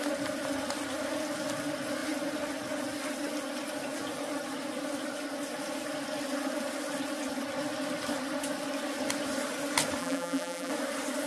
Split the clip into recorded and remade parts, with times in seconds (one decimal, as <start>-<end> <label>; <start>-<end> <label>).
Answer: 0.0-10.0 recorded; 10.0-10.7 remade; 10.7-11.3 recorded